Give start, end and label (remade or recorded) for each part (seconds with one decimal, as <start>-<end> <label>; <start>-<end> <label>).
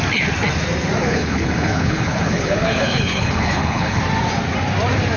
0.0-1.0 recorded; 1.0-4.0 remade; 4.0-5.2 recorded